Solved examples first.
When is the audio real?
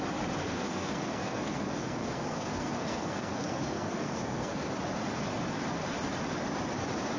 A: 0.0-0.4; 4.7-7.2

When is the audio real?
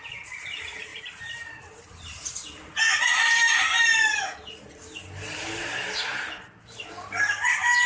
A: 0.0-0.9; 2.0-3.1; 7.5-7.9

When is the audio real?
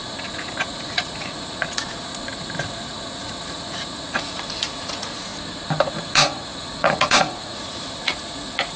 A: 5.3-5.9